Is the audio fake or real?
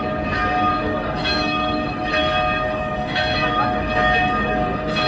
fake